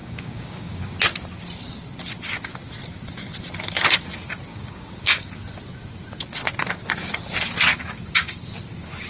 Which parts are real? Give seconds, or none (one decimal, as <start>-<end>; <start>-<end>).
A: 1.0-4.5; 5.3-7.7; 8.5-9.1